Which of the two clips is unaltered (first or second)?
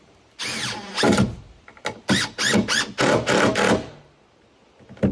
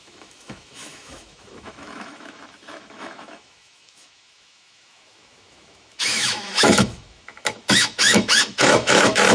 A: first